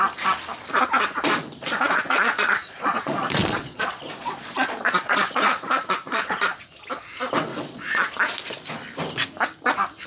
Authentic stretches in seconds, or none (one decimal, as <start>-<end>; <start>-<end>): 0.0-1.6; 6.6-7.5; 8.1-10.1